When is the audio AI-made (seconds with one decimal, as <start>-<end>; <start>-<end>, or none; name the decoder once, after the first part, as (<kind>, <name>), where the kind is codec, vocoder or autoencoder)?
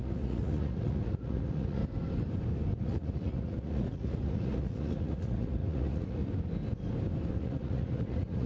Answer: 0.0-1.8 (vocoder, Vocos); 2.8-6.2; 7.3-8.5